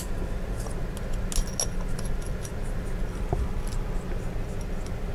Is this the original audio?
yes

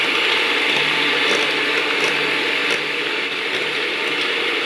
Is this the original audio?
yes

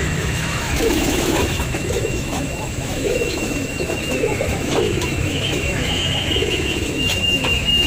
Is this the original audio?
no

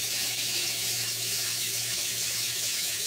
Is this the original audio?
no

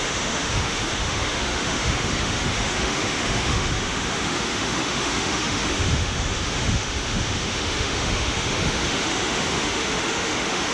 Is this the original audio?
no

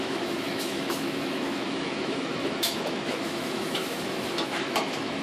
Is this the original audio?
no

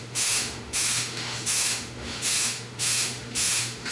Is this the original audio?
no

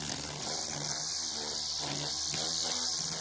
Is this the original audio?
yes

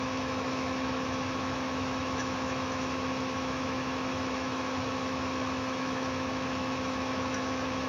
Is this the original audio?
no